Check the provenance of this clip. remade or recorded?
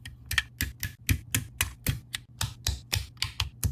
recorded